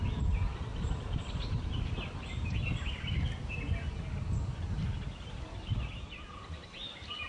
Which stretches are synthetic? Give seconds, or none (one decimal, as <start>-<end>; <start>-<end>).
none